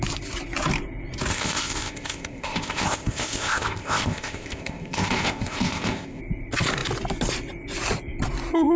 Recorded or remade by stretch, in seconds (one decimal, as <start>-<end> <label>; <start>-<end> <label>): 0.0-1.3 recorded; 1.3-6.2 remade; 6.2-8.8 recorded